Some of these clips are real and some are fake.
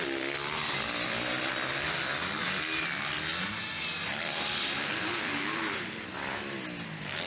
real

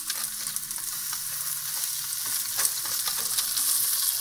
real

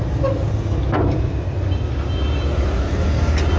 real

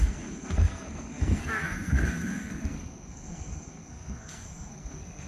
fake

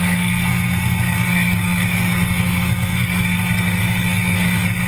fake